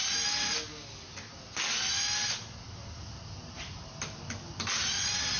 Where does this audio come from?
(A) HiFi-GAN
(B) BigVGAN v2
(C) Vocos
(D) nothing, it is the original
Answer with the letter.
D